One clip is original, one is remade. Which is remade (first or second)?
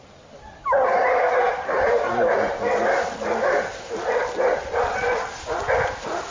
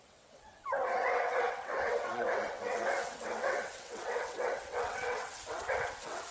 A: second